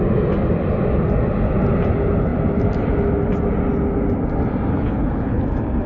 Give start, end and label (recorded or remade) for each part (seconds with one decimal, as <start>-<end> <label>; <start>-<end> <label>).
0.0-4.7 recorded; 4.7-5.4 remade; 5.4-5.9 recorded